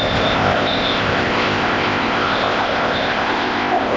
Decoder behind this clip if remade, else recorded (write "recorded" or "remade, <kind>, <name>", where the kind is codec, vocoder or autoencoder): remade, codec, ZipCodec